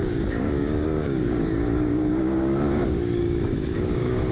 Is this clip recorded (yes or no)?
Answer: no